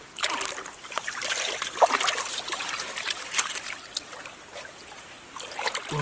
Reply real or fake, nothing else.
real